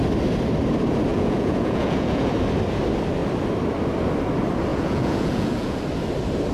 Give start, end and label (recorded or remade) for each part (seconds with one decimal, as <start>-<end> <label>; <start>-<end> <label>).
0.0-1.1 recorded; 1.1-2.3 remade; 2.3-4.7 recorded; 4.7-5.8 remade; 5.8-6.5 recorded